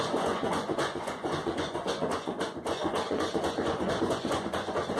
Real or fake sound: fake